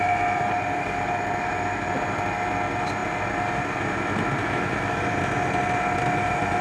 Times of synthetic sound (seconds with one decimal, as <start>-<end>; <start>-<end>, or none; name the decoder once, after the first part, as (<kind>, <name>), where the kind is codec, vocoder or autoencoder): 4.4-5.0 (autoencoder, DAC-VAE)